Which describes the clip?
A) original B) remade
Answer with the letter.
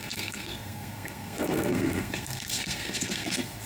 B